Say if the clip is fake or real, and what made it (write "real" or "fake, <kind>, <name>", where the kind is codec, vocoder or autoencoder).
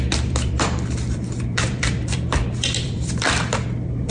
fake, vocoder, BigVGAN v2